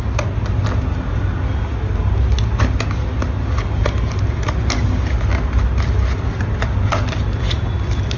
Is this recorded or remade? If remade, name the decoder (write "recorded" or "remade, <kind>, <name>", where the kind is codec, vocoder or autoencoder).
recorded